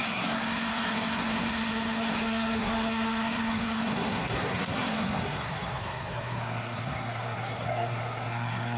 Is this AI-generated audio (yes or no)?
yes